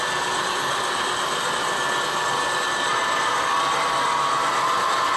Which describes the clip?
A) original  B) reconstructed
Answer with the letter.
A